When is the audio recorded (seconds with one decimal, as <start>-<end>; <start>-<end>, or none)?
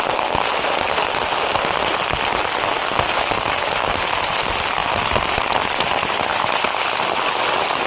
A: 0.0-7.9